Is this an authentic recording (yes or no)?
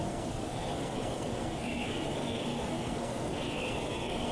no